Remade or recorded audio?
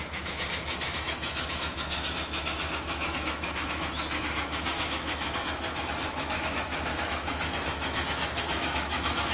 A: remade